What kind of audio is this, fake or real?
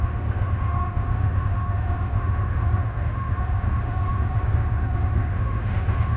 fake